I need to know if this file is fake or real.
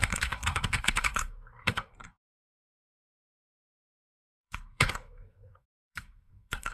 fake